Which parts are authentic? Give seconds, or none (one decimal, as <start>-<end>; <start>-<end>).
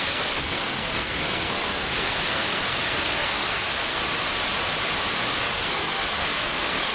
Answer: 4.0-5.1